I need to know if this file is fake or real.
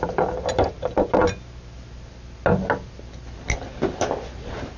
real